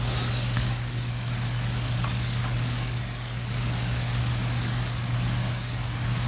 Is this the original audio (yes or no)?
no